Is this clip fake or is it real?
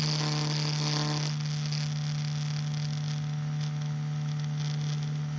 real